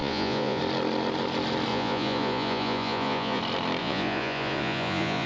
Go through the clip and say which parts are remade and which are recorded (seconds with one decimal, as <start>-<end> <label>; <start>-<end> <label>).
0.0-0.6 remade; 0.6-1.7 recorded; 1.7-3.4 remade; 3.4-3.8 recorded; 3.8-5.3 remade